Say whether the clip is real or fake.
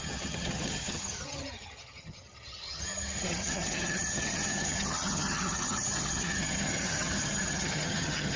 fake